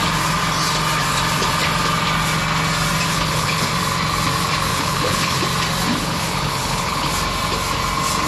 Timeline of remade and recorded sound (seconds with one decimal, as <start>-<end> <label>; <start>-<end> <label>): 0.0-3.1 recorded; 3.1-3.7 remade; 3.7-4.7 recorded; 4.7-5.4 remade; 5.4-6.0 recorded; 6.0-7.1 remade; 7.1-8.3 recorded